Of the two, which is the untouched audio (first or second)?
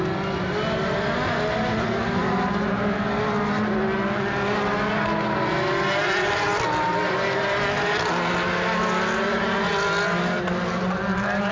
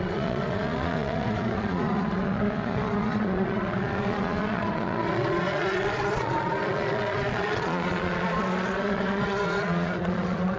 first